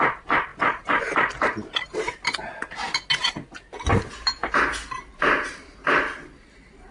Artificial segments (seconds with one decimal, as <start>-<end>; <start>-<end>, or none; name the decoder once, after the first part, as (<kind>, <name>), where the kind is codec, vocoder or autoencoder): none